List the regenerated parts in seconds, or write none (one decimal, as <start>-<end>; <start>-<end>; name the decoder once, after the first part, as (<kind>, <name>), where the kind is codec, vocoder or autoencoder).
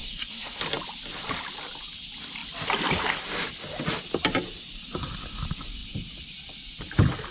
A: 0.0-0.6 (codec, SNAC)